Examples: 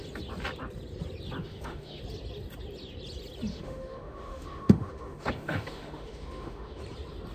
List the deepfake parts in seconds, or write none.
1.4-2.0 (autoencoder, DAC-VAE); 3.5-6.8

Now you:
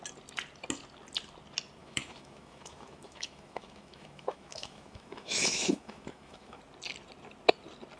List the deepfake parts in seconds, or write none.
1.8-6.6 (autoencoder, DAC-VAE)

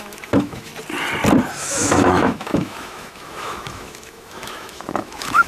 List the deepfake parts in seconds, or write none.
0.0-0.7 (autoencoder, DAC-VAE); 1.6-5.5

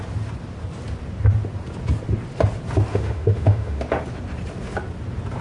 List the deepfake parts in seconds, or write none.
2.9-3.8 (autoencoder, DAC-VAE)

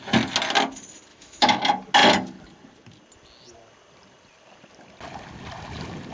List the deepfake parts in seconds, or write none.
1.1-1.6 (autoencoder, DAC-VAE)

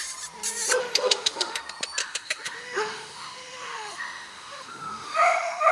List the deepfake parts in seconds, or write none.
0.8-1.6 (autoencoder, DAC-VAE); 2.0-5.7

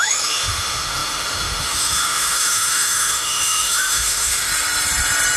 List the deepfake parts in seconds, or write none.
0.0-4.5 (autoencoder, DAC-VAE)

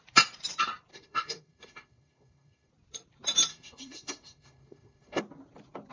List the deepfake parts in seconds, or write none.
0.9-2.7 (autoencoder, DAC-VAE); 3.5-5.2